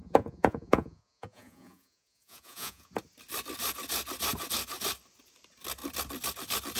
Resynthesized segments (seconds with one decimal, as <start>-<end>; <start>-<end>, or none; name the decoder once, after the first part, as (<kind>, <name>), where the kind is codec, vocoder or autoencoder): 0.0-2.9 (vocoder, Vocos)